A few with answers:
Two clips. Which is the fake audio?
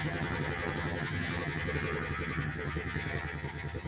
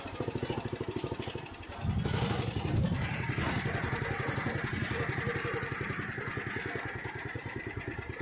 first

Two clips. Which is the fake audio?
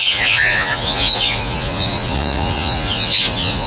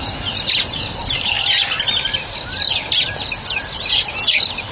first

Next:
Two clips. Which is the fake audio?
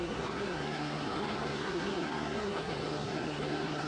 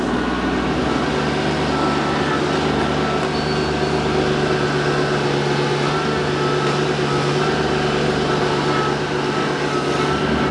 first